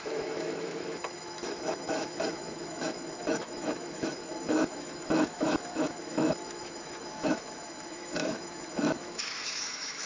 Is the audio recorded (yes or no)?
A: no